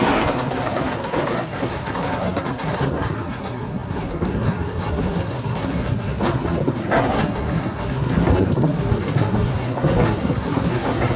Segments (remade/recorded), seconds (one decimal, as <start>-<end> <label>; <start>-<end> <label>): 0.0-11.2 remade